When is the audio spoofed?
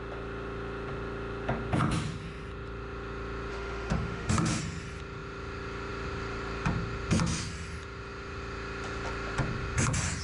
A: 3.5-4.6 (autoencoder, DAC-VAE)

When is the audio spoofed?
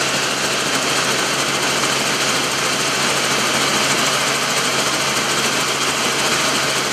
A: none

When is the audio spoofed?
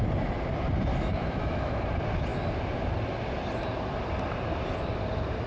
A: 0.9-1.8 (autoencoder, DAC-VAE)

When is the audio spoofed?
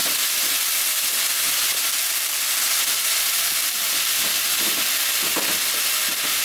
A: none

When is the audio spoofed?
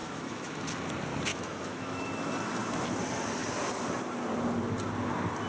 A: 0.0-0.6 (autoencoder, DAC-VAE); 1.3-2.1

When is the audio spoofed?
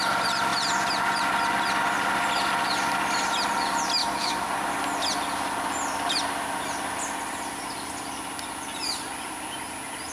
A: 4.0-4.5 (autoencoder, DAC-VAE)